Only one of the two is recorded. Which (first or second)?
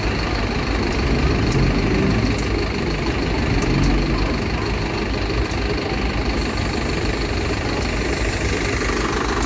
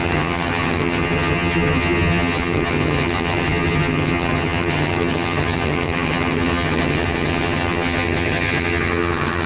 first